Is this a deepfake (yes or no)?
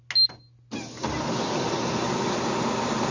no